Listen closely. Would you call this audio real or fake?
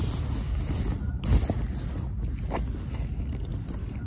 real